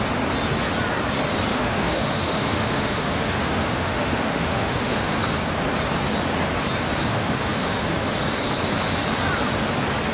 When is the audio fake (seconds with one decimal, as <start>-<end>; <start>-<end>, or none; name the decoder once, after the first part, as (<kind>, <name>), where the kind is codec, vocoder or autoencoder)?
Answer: 1.5-5.2 (autoencoder, DAC-VAE); 7.1-8.1